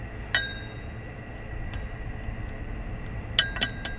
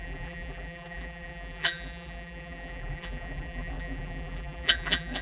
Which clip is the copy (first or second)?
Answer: second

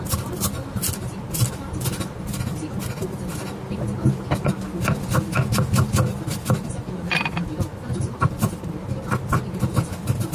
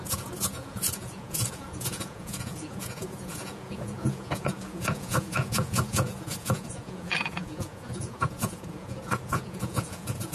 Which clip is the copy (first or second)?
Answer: second